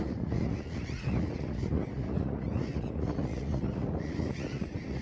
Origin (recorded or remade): remade